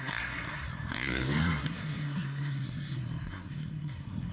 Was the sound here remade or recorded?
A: remade